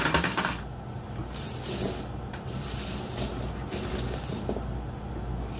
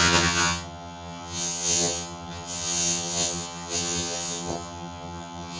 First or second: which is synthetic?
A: second